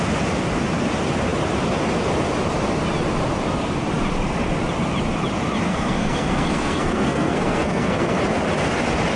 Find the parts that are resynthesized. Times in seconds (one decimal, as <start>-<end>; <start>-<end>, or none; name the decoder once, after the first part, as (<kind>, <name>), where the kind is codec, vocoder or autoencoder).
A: 5.7-8.2 (codec, SNAC)